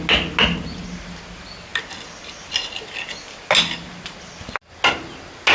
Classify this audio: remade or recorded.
recorded